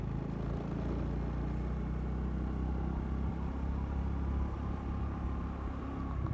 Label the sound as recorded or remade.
recorded